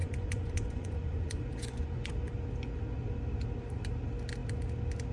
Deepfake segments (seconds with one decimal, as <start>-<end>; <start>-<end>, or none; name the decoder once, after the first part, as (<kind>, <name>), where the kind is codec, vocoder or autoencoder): 0.0-2.1 (vocoder, Vocos)